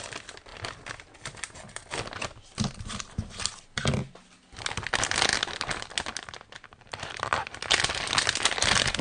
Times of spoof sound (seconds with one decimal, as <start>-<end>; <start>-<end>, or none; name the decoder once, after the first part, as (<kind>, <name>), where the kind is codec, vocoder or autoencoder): none